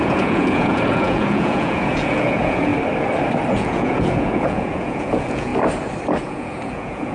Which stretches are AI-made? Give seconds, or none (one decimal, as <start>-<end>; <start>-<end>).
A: 0.0-2.7; 3.5-5.5; 6.2-7.1